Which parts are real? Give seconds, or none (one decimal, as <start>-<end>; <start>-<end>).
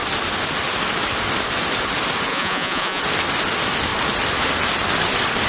0.0-2.3; 3.0-5.5